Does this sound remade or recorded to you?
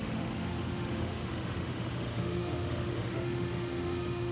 remade